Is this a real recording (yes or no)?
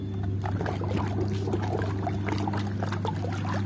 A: yes